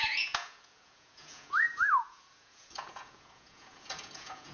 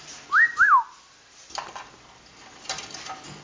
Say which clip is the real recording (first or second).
second